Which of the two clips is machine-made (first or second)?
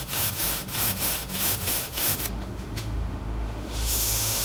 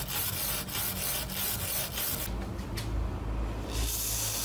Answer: first